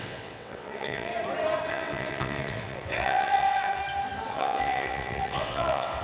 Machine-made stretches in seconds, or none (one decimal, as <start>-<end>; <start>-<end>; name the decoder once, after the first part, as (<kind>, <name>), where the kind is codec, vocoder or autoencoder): 0.0-1.1 (vocoder, WaveNeXt); 1.7-3.8; 4.3-6.0